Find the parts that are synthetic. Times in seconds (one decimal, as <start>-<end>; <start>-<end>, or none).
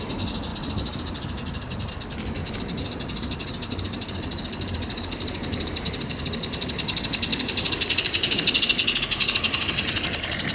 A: 0.5-1.9; 2.4-6.2; 7.3-8.5